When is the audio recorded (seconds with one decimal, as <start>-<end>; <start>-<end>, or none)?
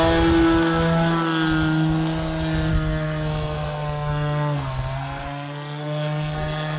0.0-2.7